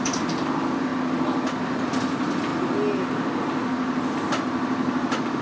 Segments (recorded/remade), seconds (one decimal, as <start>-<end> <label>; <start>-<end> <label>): 0.0-0.9 remade; 0.9-1.9 recorded; 1.9-2.5 remade; 2.5-4.1 recorded; 4.1-5.4 remade